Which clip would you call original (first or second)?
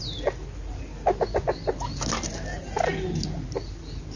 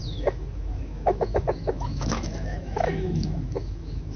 first